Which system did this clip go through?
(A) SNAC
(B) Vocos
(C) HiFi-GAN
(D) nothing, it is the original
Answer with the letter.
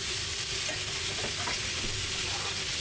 D